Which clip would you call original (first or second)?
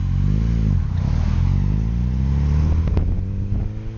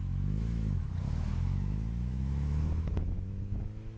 first